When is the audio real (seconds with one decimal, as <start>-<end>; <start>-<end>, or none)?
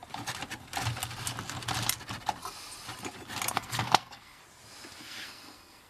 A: 0.0-3.5; 4.4-5.0